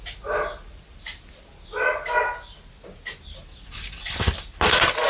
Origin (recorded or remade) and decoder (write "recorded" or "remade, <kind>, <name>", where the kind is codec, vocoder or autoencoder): recorded